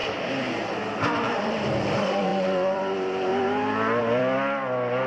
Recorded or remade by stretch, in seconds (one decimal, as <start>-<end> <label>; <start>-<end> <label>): 0.0-1.0 recorded; 1.0-3.3 remade; 3.3-4.0 recorded; 4.0-5.1 remade